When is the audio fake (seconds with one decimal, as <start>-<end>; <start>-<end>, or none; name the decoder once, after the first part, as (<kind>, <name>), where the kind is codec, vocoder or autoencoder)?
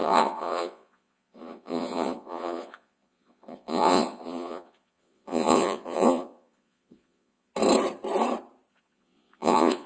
0.0-7.5 (vocoder, Vocos); 8.7-9.9